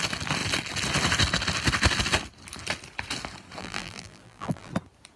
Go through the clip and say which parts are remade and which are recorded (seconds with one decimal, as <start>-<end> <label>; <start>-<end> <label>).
0.0-3.6 recorded; 3.6-4.7 remade; 4.7-5.2 recorded